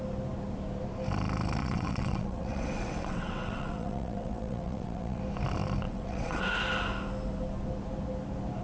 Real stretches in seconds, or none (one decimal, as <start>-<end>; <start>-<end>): 0.0-1.6; 5.2-5.8; 6.4-8.6